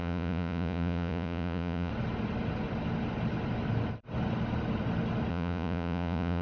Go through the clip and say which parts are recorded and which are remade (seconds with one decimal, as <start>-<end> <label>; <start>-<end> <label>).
0.0-1.9 remade; 1.9-5.3 recorded; 5.3-6.4 remade